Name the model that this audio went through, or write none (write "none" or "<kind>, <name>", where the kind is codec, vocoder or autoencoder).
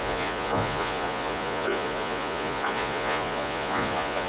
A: vocoder, Vocos